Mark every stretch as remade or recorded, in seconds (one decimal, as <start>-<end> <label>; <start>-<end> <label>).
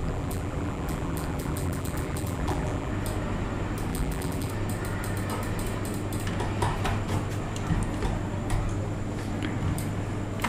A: 0.0-2.9 remade; 2.9-3.9 recorded; 3.9-4.5 remade; 4.5-10.5 recorded